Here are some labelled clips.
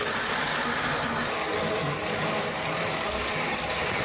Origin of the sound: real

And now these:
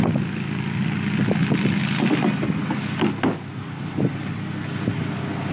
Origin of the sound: real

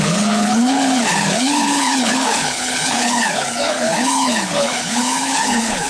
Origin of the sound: fake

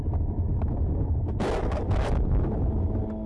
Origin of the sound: real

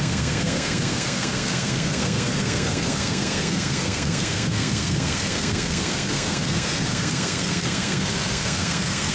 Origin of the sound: fake